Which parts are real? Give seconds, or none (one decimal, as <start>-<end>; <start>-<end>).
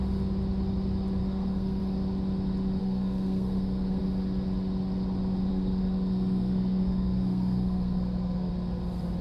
0.0-1.2; 1.8-2.8; 4.0-5.5; 8.5-9.2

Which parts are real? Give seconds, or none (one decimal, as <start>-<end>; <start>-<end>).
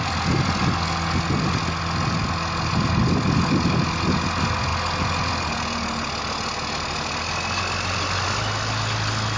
0.0-9.4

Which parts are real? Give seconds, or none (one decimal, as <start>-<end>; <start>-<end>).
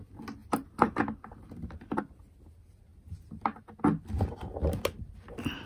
0.0-0.4; 2.0-5.7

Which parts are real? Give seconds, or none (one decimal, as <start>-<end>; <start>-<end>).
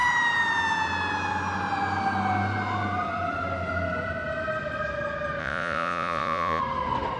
0.0-5.4; 6.6-7.2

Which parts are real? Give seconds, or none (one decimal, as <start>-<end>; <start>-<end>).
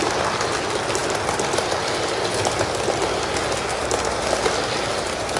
0.0-5.4